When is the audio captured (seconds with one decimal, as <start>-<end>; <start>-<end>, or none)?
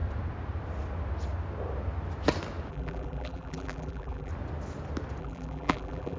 0.0-2.7; 4.3-5.2